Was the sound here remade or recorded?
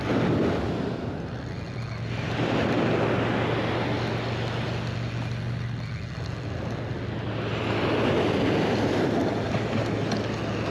recorded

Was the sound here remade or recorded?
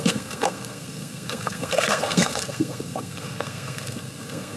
remade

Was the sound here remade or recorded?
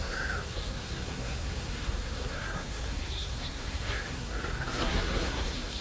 remade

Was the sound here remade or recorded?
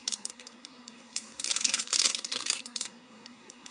remade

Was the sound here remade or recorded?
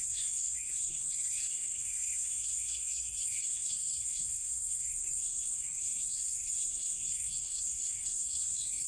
remade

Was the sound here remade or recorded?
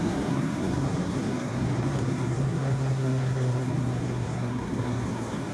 remade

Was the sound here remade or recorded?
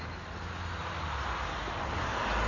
recorded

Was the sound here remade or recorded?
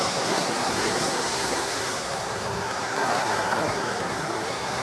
remade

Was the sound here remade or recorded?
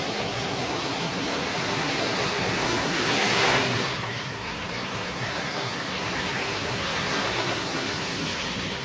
remade